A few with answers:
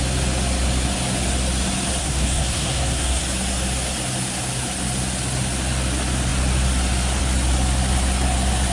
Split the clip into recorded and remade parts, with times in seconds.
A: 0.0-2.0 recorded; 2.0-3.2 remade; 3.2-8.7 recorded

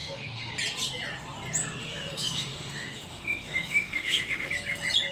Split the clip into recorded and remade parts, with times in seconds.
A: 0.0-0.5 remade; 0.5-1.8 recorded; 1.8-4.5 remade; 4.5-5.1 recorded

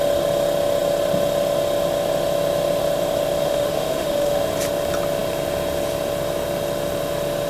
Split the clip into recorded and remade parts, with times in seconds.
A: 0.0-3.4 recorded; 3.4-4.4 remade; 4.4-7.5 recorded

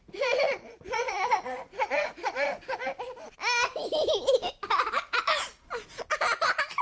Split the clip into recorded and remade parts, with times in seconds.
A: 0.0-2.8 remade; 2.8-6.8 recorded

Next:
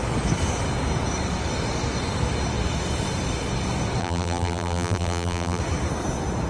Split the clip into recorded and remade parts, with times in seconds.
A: 0.0-4.0 recorded; 4.0-5.6 remade; 5.6-6.5 recorded

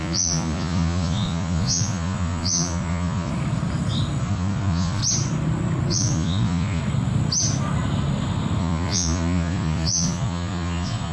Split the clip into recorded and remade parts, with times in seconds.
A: 0.0-3.3 remade; 3.3-4.2 recorded; 4.2-5.0 remade; 5.0-5.9 recorded; 5.9-6.8 remade; 6.8-8.6 recorded; 8.6-11.1 remade

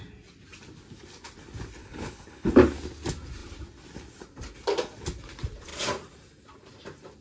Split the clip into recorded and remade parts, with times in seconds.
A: 0.0-1.8 recorded; 1.8-2.5 remade; 2.5-7.2 recorded